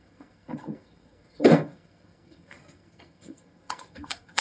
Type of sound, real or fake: fake